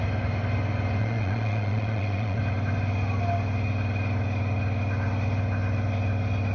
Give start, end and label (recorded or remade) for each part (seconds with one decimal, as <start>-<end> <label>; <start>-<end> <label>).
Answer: 0.0-1.0 recorded; 1.0-2.4 remade; 2.4-6.5 recorded